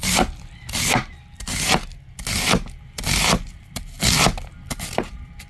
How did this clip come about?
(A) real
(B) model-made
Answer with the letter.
A